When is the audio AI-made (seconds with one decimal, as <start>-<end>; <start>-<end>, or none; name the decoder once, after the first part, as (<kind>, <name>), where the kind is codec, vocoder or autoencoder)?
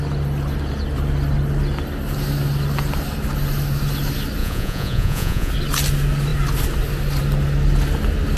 4.4-5.5 (vocoder, Vocos)